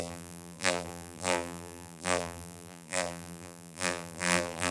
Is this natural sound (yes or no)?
no